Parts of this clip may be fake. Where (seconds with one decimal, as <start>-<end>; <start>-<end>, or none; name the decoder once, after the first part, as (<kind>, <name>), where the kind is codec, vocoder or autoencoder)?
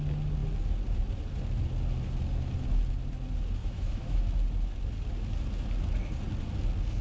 3.6-4.2 (autoencoder, DAC-VAE)